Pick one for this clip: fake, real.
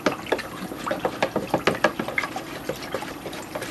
real